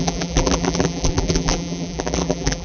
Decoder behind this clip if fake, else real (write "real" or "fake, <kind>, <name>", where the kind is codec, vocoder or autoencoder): fake, vocoder, BigVGAN v2